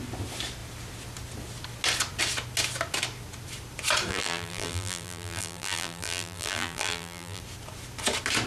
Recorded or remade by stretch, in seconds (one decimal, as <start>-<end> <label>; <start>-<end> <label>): 0.0-4.1 recorded; 4.1-7.4 remade; 7.4-8.5 recorded